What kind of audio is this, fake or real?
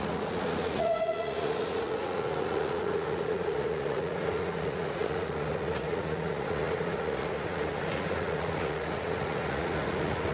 fake